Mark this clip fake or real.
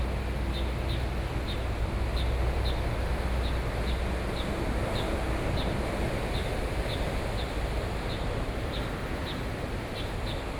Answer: real